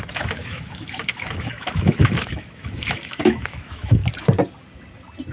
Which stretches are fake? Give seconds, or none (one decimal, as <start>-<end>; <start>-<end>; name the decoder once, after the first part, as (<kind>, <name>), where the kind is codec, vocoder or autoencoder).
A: 0.0-4.0 (autoencoder, DAC-VAE)